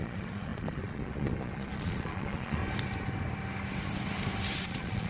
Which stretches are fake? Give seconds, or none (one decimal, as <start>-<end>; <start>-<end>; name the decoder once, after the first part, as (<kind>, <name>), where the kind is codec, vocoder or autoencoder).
0.0-2.6 (vocoder, Vocos); 4.6-5.1

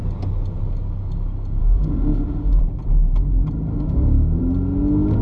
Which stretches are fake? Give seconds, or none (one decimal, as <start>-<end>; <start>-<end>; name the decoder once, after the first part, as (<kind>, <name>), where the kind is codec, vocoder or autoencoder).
1.6-2.6 (autoencoder, DAC-VAE); 3.7-4.4

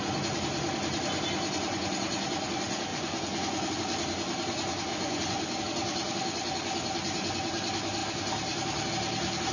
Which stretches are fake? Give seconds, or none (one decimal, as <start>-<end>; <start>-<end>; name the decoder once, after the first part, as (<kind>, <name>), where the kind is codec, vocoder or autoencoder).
2.9-3.7 (vocoder, Vocos); 4.9-5.6

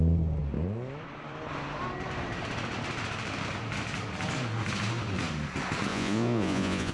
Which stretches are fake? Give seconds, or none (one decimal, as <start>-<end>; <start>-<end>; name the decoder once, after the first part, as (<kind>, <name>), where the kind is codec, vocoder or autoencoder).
5.9-6.9 (vocoder, Vocos)

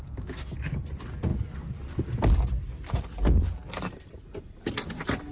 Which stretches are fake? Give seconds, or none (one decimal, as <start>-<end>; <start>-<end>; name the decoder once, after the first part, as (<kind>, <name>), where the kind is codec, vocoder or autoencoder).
none

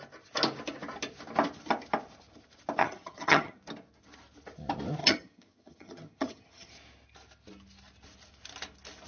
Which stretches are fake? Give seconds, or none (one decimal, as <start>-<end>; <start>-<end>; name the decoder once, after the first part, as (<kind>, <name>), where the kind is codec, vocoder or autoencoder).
2.8-3.6 (vocoder, HiFi-GAN); 5.0-6.7